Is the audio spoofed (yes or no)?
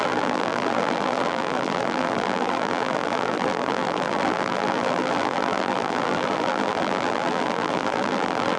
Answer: yes